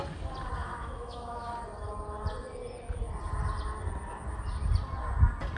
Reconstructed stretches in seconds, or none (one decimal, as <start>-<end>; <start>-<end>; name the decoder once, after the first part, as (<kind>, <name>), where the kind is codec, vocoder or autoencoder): 0.6-1.5 (autoencoder, DAC-VAE)